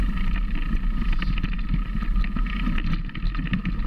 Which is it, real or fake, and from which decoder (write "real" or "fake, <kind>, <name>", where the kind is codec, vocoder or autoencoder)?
real